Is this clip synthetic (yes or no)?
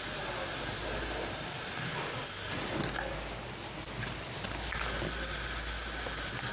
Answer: no